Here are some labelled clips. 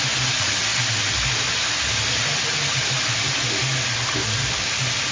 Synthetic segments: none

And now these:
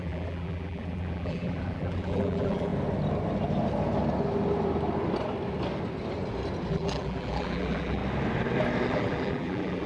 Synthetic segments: 0.0-2.7 (vocoder, BigVGAN v2); 6.7-8.0; 8.9-9.9

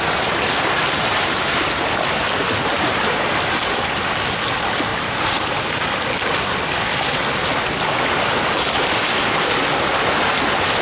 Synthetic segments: 1.1-1.9 (vocoder, BigVGAN v2); 4.9-6.0

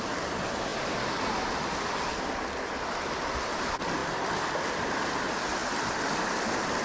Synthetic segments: none